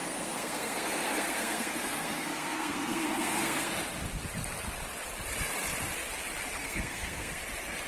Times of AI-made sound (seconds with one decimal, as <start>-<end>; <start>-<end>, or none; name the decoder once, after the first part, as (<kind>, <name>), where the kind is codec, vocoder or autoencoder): 0.0-3.7 (codec, SNAC); 6.6-7.4